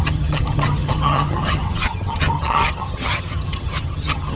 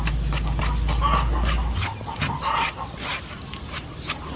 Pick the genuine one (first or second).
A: second